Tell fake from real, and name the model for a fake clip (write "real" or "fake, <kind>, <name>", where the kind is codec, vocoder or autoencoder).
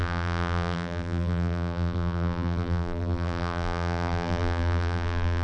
fake, vocoder, BigVGAN v2